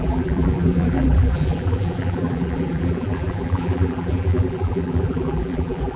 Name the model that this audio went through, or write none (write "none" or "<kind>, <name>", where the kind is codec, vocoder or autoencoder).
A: vocoder, BigVGAN v2